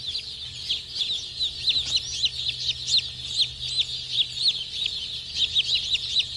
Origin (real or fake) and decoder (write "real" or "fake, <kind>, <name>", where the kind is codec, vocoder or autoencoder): real